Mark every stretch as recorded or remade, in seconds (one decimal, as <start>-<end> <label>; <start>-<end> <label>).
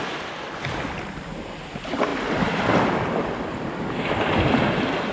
0.0-5.1 recorded